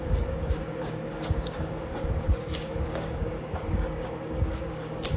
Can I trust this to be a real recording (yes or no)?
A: no